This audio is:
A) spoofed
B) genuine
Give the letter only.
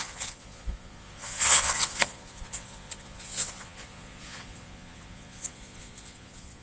A